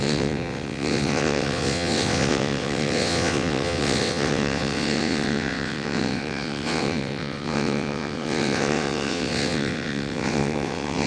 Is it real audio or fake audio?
fake